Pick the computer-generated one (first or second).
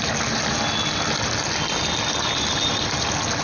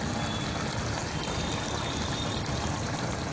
second